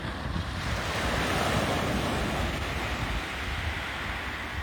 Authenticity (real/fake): real